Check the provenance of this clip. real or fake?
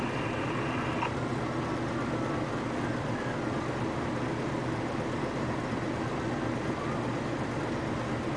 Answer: real